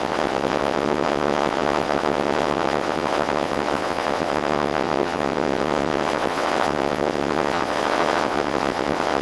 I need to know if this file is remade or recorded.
remade